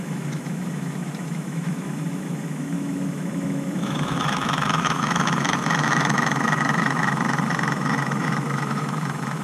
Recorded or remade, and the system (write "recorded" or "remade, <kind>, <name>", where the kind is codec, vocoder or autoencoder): remade, autoencoder, DAC-VAE